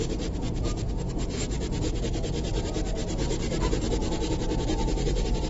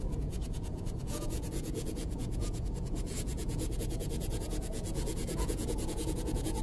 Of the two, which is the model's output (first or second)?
second